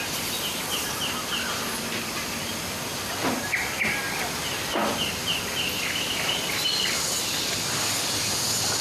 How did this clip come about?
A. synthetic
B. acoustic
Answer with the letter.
B